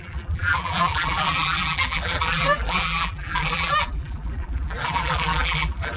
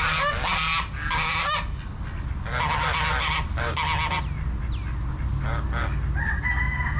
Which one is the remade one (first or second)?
first